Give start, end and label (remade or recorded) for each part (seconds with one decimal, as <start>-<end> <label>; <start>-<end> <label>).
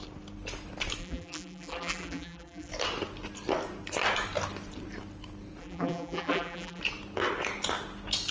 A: 0.0-1.0 recorded; 1.0-2.7 remade; 2.7-5.6 recorded; 5.6-6.8 remade; 6.8-8.3 recorded